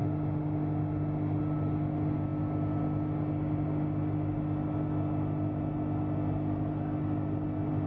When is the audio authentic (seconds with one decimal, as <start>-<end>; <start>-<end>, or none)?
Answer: 0.0-7.9